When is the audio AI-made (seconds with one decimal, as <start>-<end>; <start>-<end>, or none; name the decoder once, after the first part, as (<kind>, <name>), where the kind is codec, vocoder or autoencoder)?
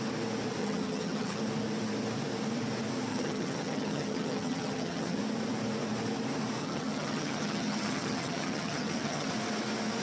0.6-1.4 (vocoder, HiFi-GAN); 3.1-5.2; 6.6-9.3